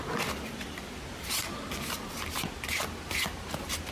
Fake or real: real